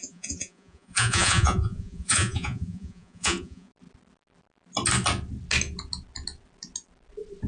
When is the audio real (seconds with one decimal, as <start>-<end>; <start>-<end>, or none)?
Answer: 3.7-7.5